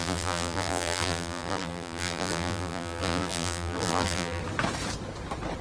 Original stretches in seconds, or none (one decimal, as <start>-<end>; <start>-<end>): 4.4-5.6